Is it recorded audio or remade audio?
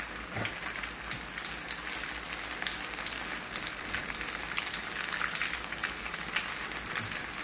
recorded